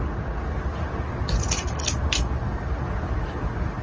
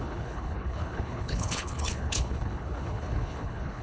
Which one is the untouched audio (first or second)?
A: first